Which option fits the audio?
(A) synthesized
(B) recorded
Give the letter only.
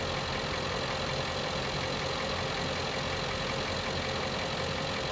B